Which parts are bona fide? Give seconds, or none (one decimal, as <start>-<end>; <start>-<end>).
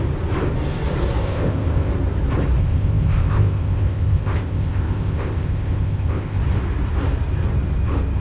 0.0-1.2; 1.9-2.6; 6.4-8.2